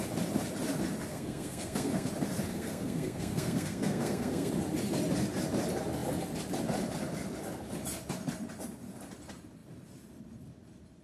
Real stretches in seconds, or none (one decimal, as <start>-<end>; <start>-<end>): 0.0-1.1; 2.1-2.5; 4.5-11.0